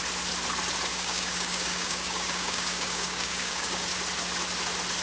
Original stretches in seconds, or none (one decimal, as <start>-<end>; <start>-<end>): 0.0-0.9; 3.9-5.0